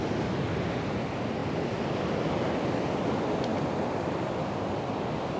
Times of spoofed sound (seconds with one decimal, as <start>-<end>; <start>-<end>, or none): none